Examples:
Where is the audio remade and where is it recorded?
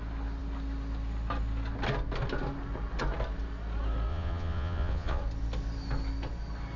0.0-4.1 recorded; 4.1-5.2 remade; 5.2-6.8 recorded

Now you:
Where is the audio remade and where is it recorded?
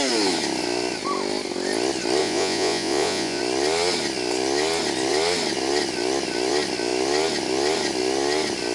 0.0-2.2 recorded; 2.2-3.4 remade; 3.4-8.7 recorded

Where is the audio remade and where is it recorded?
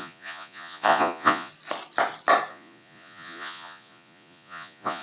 0.0-1.5 remade; 1.5-2.5 recorded; 2.5-5.0 remade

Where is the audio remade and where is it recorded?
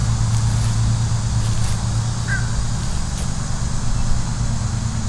0.0-5.1 recorded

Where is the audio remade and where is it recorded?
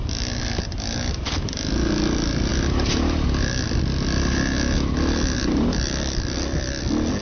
0.0-7.2 recorded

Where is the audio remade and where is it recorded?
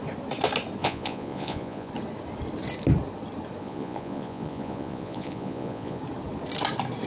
0.0-0.8 recorded; 0.8-1.9 remade; 1.9-3.6 recorded; 3.6-6.0 remade; 6.0-7.1 recorded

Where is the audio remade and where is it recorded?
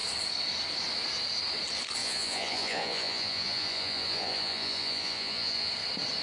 0.0-2.0 recorded; 2.0-5.7 remade; 5.7-6.2 recorded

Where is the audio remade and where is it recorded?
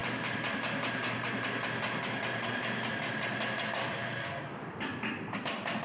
0.0-5.8 recorded